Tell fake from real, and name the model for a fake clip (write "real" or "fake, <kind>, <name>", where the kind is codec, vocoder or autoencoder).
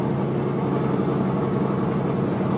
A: real